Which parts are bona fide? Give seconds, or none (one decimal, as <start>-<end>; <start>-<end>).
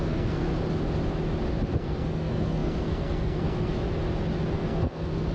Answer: 0.5-1.7; 3.7-4.5